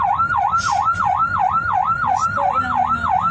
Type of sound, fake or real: real